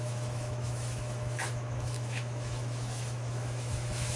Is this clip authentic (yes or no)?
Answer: no